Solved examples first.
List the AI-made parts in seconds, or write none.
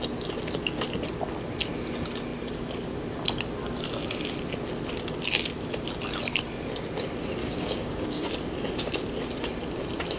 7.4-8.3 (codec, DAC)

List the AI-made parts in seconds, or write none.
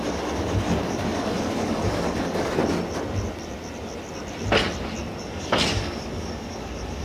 0.0-2.6 (codec, DAC); 5.2-7.0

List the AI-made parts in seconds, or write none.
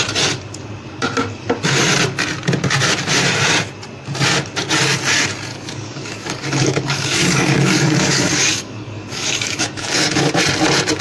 5.5-10.3 (codec, DAC)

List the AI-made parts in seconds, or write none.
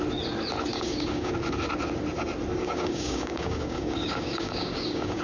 0.7-1.3 (codec, DAC); 2.6-5.2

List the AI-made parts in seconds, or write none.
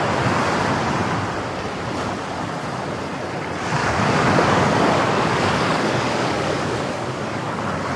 3.8-7.6 (codec, DAC)